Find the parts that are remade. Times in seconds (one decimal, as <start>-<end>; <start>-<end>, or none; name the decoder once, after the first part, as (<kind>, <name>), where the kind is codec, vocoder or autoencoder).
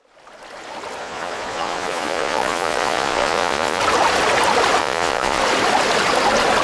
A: 1.0-3.8 (vocoder, Vocos); 4.8-5.4